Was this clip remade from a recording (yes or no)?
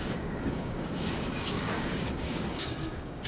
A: yes